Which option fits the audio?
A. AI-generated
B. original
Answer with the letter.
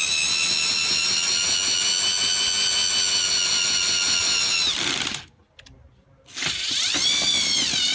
B